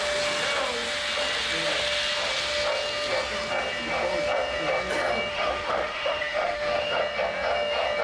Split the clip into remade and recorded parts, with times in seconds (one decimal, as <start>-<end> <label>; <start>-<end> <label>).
0.0-5.3 recorded; 5.3-7.0 remade; 7.0-8.0 recorded